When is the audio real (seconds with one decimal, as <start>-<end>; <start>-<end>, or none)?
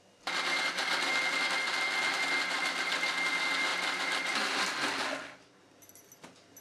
0.0-6.6